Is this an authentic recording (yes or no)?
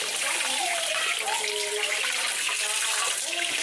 yes